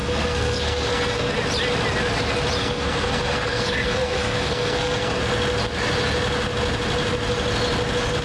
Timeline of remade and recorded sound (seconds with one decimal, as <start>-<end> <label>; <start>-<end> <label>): 0.0-1.3 remade; 1.3-2.6 recorded; 2.6-5.2 remade; 5.2-8.2 recorded

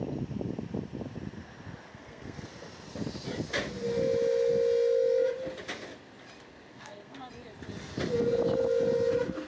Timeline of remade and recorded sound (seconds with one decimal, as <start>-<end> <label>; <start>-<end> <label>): 0.0-1.9 recorded; 1.9-2.5 remade; 2.5-6.7 recorded; 6.7-7.3 remade; 7.3-9.5 recorded

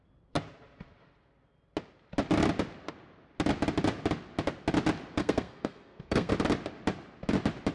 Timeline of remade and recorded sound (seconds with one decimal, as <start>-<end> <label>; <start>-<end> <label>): 0.0-5.2 recorded; 5.2-6.3 remade; 6.3-7.7 recorded

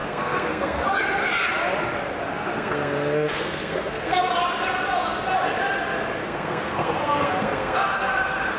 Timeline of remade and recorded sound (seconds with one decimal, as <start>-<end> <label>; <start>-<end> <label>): 0.0-0.9 remade; 0.9-2.3 recorded; 2.3-4.3 remade; 4.3-6.2 recorded; 6.2-8.6 remade

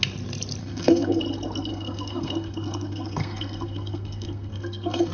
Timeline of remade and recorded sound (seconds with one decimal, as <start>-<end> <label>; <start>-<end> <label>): 0.0-0.6 recorded; 0.6-1.2 remade; 1.2-1.7 recorded; 1.7-5.1 remade